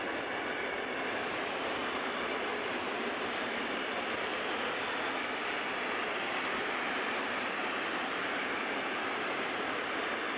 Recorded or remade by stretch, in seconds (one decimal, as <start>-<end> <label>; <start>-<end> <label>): 0.0-1.8 remade; 1.8-2.9 recorded; 2.9-4.3 remade; 4.3-7.6 recorded; 7.6-10.4 remade